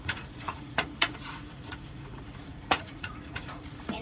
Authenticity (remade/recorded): remade